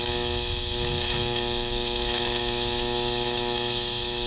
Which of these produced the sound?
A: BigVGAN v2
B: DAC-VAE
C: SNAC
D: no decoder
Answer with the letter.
B